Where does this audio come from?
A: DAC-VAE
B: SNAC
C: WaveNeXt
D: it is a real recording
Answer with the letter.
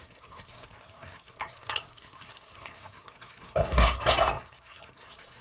B